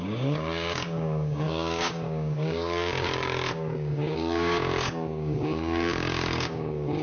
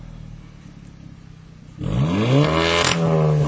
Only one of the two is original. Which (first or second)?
second